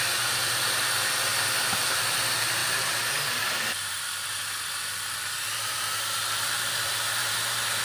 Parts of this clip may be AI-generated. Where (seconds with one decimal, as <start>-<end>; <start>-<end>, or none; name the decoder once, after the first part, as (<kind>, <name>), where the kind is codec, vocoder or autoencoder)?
1.3-2.0 (vocoder, BigVGAN v2); 2.6-7.3